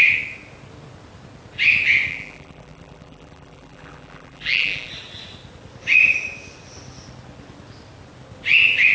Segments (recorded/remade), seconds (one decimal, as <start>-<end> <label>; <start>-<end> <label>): 0.0-2.1 recorded; 2.1-4.9 remade; 4.9-8.9 recorded